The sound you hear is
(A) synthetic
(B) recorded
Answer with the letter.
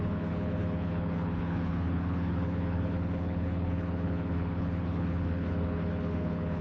A